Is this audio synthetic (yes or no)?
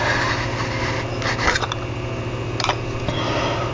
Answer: no